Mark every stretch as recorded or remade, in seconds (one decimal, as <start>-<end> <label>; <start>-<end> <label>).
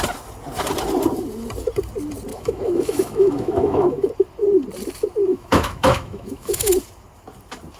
0.0-2.3 recorded; 2.3-4.1 remade; 4.1-5.3 recorded; 5.3-6.7 remade; 6.7-7.8 recorded